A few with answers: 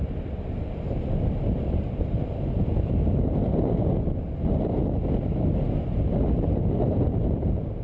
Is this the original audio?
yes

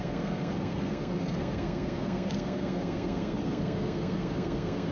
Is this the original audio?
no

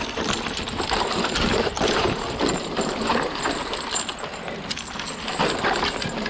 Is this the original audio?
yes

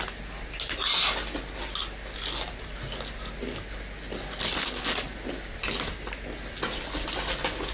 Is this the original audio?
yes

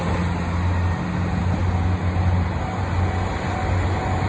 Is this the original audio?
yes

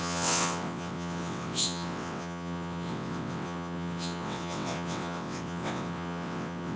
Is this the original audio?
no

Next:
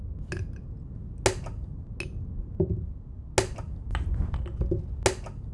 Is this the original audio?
yes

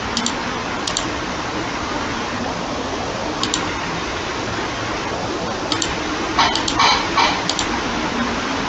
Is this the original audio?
yes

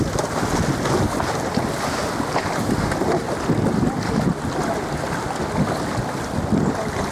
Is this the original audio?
yes